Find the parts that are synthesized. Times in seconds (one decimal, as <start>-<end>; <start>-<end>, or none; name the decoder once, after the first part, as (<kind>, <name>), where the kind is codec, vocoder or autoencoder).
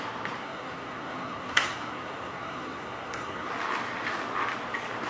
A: 0.4-3.5 (codec, SNAC)